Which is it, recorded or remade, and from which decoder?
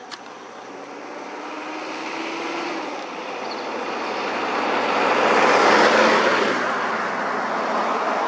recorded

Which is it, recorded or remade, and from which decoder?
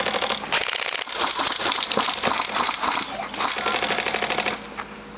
recorded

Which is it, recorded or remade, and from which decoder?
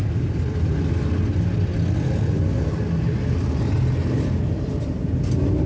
recorded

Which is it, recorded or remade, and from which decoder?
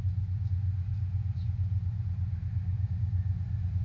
recorded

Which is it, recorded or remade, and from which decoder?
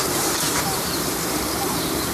remade, vocoder, BigVGAN v2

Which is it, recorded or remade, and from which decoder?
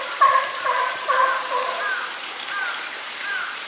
remade, vocoder, BigVGAN v2